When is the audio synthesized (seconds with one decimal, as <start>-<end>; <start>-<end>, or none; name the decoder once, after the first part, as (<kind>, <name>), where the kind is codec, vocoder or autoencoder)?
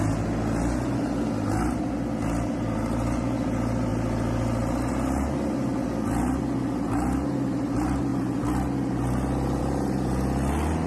none